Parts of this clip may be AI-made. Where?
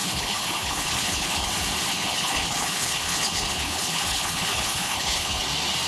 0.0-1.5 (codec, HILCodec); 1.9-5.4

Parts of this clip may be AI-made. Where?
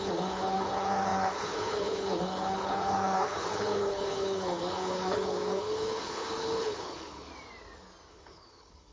0.0-7.3 (codec, HILCodec); 8.1-8.9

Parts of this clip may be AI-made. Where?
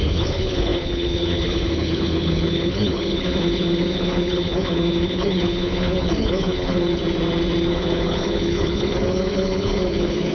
0.0-7.0 (codec, HILCodec); 7.7-10.3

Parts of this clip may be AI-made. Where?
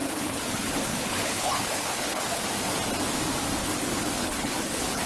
0.0-2.2 (codec, HILCodec); 3.6-5.1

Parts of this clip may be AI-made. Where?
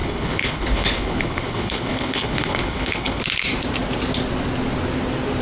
0.0-3.2 (codec, HILCodec)